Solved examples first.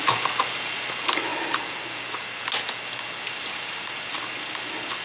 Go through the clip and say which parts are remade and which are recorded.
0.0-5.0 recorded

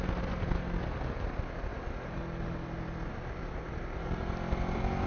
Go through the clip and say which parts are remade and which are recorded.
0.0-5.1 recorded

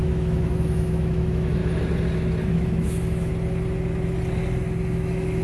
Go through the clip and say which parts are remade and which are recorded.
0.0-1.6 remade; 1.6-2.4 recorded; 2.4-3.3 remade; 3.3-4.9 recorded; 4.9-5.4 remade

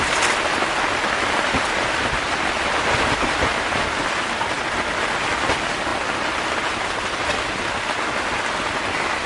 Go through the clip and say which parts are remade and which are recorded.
0.0-9.3 recorded

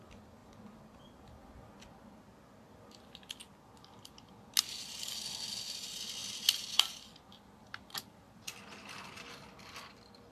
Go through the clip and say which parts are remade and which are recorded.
0.0-10.3 recorded

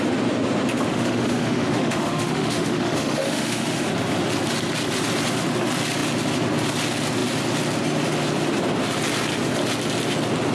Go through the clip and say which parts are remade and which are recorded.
0.0-0.9 recorded; 0.9-3.9 remade; 3.9-10.5 recorded